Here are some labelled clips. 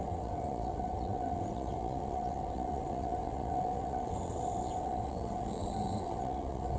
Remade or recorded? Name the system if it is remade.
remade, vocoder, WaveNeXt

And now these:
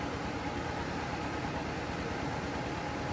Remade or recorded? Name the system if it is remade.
recorded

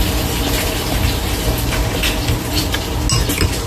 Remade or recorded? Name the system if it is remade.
recorded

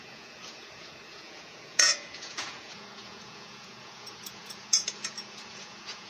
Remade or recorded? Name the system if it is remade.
remade, vocoder, Vocos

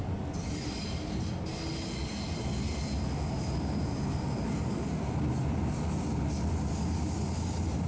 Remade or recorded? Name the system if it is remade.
recorded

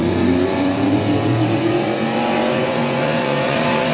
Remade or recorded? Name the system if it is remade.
remade, vocoder, Vocos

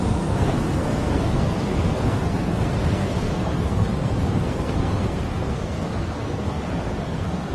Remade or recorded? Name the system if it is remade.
remade, codec, SNAC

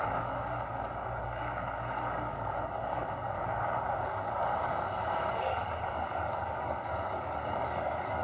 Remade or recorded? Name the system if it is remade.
remade, codec, DAC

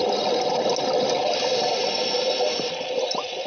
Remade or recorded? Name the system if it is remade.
recorded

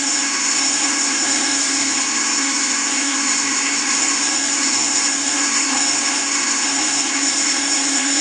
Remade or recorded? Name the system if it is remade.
remade, codec, SNAC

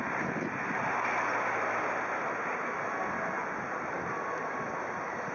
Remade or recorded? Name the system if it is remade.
recorded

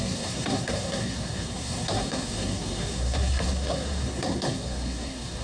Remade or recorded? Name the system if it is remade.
remade, codec, SNAC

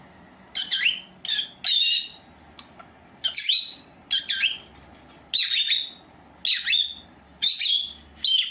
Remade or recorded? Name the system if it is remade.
recorded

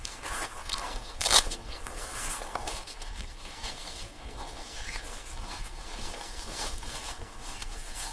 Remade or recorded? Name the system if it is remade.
remade, codec, SNAC